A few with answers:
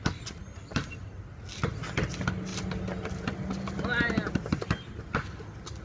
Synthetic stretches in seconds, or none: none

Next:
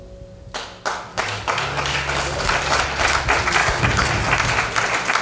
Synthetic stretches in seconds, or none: 1.1-2.8 (codec, DAC); 3.6-4.2

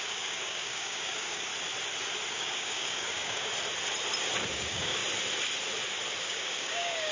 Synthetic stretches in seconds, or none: 0.0-1.5 (codec, DAC); 2.3-3.5; 4.5-5.0; 6.2-7.1

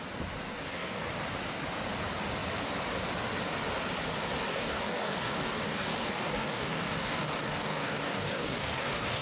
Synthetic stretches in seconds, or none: 0.5-1.1 (codec, DAC); 4.5-9.2